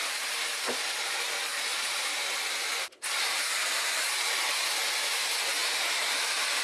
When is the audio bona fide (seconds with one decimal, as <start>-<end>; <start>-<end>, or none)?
0.0-1.7; 3.8-6.6